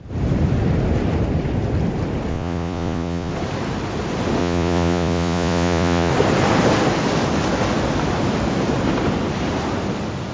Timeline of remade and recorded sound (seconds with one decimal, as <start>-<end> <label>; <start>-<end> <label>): 0.0-2.3 recorded; 2.3-3.3 remade; 3.3-4.4 recorded; 4.4-6.1 remade; 6.1-10.3 recorded